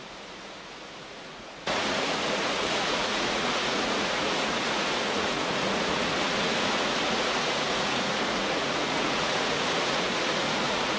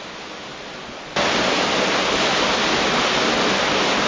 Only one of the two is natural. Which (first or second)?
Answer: second